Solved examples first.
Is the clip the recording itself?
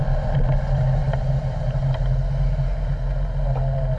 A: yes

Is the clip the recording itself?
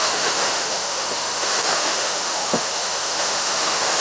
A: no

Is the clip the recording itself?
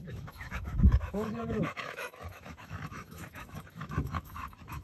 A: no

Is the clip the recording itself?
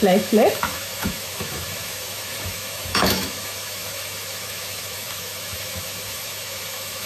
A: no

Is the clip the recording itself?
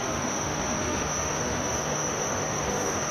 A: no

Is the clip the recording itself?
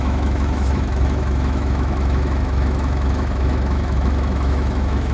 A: no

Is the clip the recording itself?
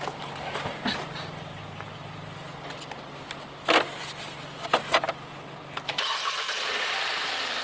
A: yes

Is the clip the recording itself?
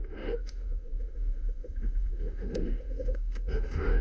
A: no